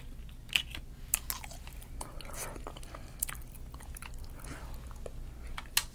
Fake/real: real